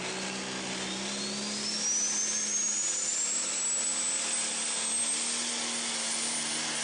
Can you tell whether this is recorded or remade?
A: recorded